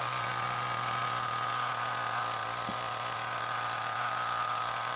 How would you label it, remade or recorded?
recorded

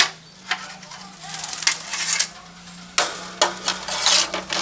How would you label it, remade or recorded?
recorded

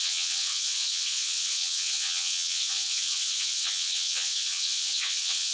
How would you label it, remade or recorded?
remade